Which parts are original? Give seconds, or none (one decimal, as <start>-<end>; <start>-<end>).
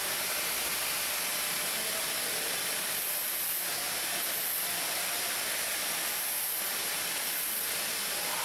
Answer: 0.0-8.4